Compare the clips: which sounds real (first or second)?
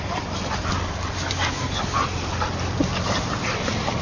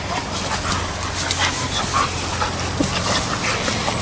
second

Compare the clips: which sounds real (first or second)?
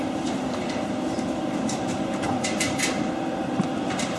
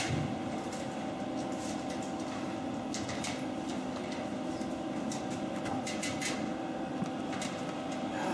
second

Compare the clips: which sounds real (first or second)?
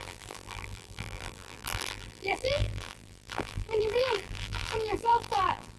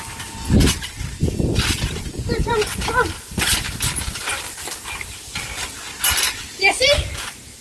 second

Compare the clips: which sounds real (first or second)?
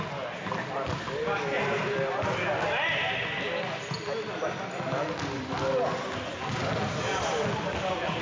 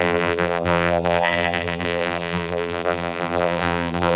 first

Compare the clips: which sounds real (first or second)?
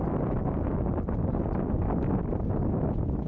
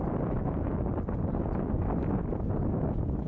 first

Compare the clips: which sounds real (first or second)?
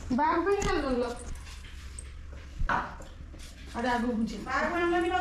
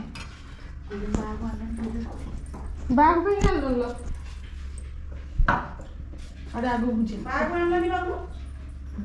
second